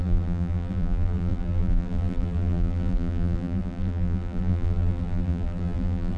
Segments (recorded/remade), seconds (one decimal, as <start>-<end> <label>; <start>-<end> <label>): 0.0-6.2 remade